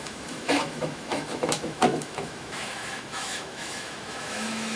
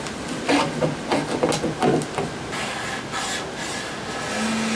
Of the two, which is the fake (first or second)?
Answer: first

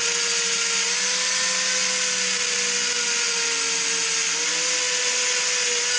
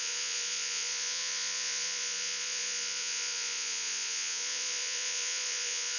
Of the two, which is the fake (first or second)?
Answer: second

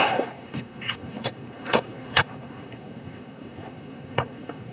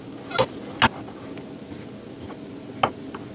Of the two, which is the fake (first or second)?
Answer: first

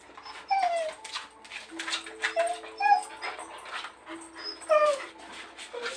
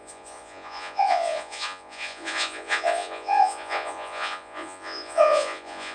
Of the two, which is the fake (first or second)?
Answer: second